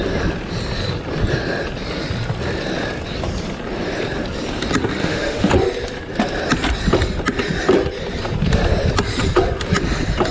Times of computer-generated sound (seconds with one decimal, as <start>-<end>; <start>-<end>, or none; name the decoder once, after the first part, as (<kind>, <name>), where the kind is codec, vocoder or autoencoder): 5.0-5.5 (autoencoder, DAC-VAE)